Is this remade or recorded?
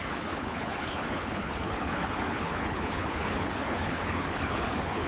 remade